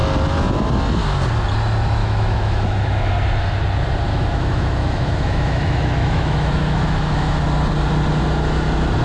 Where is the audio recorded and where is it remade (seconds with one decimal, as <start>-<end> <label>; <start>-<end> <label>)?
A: 0.0-2.0 recorded; 2.0-3.1 remade; 3.1-4.1 recorded; 4.1-7.4 remade; 7.4-9.0 recorded